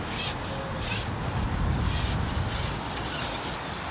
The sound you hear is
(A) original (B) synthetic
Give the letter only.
A